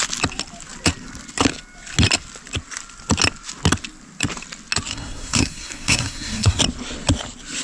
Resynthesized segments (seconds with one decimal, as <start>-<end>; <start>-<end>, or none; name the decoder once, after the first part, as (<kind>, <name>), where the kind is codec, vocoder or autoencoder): 4.9-6.6 (codec, SNAC)